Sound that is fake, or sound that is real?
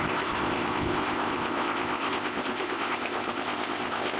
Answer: fake